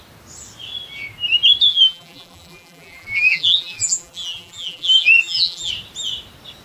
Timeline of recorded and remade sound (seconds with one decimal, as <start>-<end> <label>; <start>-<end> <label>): 0.0-1.7 recorded; 1.7-5.7 remade; 5.7-6.6 recorded